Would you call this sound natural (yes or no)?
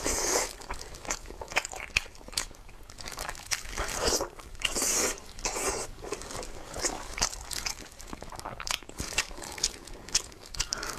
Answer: no